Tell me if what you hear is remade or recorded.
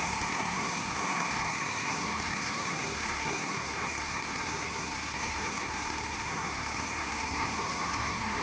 remade